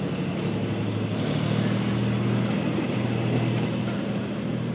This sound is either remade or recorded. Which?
recorded